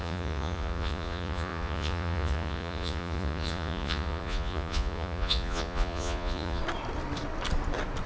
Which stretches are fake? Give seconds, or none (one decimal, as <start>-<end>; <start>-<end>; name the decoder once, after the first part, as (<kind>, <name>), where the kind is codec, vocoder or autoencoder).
0.0-6.6 (vocoder, Vocos)